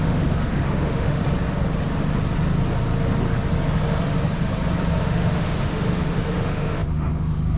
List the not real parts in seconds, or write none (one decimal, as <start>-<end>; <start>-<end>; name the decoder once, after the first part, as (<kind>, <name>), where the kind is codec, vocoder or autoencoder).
0.0-1.2 (autoencoder, DAC-VAE); 5.0-7.6